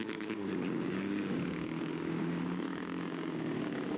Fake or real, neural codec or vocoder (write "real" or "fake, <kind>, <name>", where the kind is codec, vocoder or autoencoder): fake, codec, DAC